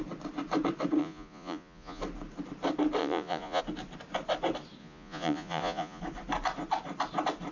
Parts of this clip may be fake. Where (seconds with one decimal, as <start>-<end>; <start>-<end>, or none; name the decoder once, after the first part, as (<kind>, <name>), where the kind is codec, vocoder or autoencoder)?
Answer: 1.0-2.0 (vocoder, Vocos); 3.0-3.6; 4.8-6.0